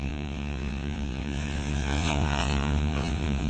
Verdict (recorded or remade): remade